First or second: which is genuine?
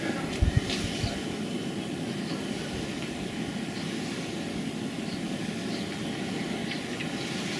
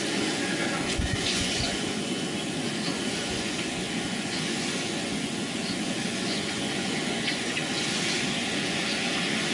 first